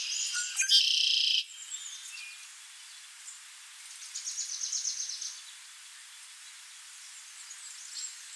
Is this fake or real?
real